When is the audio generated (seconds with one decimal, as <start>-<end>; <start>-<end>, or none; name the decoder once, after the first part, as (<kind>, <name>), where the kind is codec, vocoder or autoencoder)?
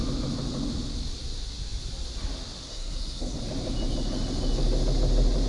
2.7-3.4 (codec, SNAC)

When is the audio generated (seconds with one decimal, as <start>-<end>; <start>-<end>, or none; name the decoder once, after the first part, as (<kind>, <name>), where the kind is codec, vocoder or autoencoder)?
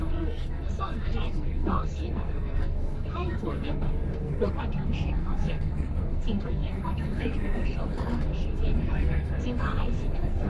0.0-10.5 (codec, SNAC)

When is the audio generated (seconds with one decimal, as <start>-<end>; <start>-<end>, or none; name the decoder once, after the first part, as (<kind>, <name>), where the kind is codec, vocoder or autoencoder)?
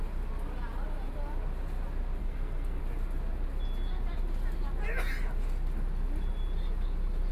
2.2-2.8 (codec, SNAC)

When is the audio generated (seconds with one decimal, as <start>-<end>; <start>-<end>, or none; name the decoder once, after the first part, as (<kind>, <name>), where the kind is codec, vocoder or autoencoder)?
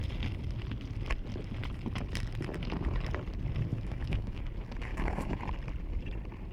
3.7-4.4 (autoencoder, DAC-VAE); 4.9-5.4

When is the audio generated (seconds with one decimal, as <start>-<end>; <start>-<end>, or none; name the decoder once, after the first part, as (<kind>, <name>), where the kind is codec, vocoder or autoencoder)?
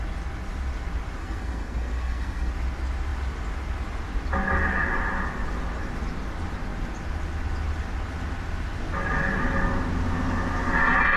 1.2-2.5 (codec, SNAC)